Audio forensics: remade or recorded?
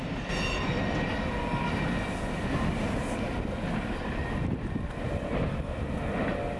recorded